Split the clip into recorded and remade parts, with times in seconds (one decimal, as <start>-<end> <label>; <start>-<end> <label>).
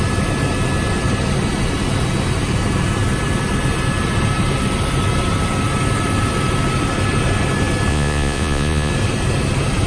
0.0-7.9 recorded; 7.9-8.9 remade; 8.9-9.9 recorded